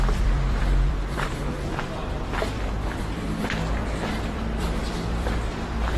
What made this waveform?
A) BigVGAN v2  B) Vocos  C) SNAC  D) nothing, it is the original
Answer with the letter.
A